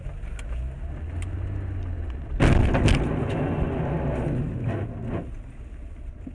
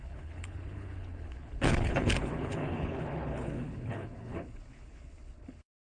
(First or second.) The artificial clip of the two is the second